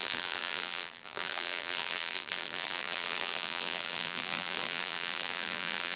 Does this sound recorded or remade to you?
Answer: remade